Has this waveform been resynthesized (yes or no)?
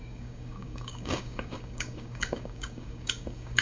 yes